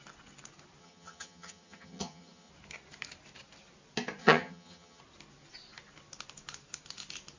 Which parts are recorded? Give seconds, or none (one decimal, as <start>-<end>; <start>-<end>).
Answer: 0.0-0.8; 2.5-4.2; 5.0-7.4